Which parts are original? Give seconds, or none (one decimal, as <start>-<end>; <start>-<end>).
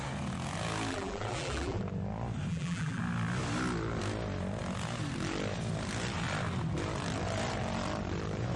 0.0-0.9; 1.8-2.5; 3.0-8.6